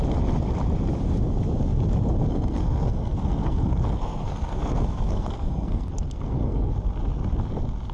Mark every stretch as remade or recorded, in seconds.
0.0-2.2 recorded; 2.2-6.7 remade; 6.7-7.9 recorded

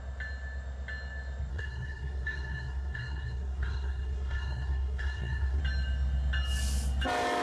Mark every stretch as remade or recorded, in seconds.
0.0-1.5 recorded; 1.5-5.6 remade; 5.6-7.4 recorded

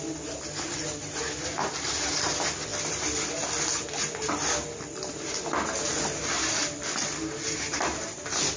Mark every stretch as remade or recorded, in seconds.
0.0-8.6 recorded

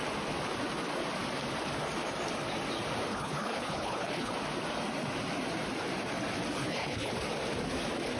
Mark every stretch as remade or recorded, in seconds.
0.0-3.1 recorded; 3.1-4.3 remade; 4.3-6.6 recorded; 6.6-7.1 remade; 7.1-8.2 recorded

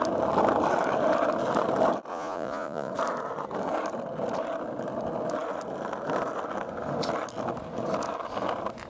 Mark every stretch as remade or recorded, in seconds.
0.0-2.1 recorded; 2.1-2.9 remade; 2.9-8.9 recorded

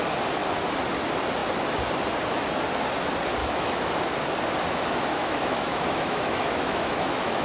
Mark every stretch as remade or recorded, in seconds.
0.0-3.4 recorded; 3.4-3.9 remade; 3.9-5.1 recorded; 5.1-7.4 remade